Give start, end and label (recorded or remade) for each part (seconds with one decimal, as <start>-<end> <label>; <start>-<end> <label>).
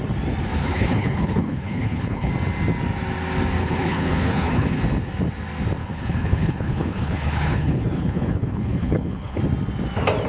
0.0-0.6 recorded; 0.6-2.3 remade; 2.3-3.6 recorded; 3.6-4.8 remade; 4.8-5.8 recorded; 5.8-9.4 remade; 9.4-10.3 recorded